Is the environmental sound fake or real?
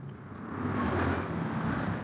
real